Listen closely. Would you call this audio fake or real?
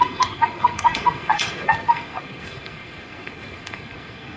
fake